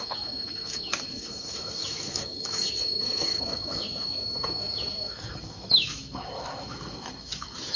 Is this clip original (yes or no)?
no